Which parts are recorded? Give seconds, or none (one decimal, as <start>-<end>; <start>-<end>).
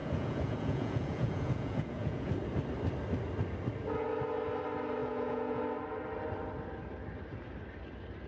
2.3-5.0; 5.6-8.3